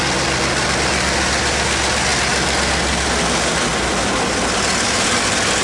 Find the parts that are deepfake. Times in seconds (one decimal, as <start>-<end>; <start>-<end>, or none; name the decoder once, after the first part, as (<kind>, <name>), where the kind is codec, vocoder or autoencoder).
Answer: none